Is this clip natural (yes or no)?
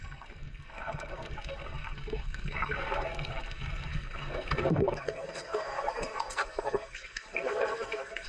no